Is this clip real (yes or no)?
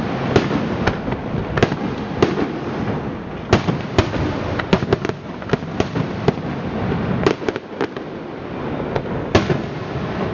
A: yes